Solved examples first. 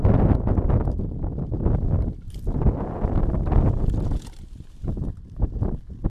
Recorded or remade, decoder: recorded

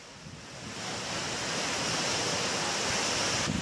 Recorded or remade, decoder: recorded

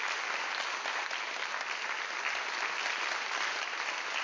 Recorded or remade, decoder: recorded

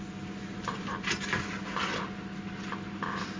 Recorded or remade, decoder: recorded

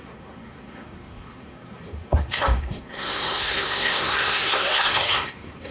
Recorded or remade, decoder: remade, codec, SNAC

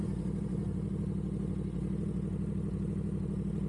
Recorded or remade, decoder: recorded